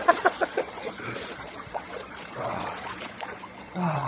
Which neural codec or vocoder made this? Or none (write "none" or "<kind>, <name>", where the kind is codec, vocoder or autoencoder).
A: vocoder, Vocos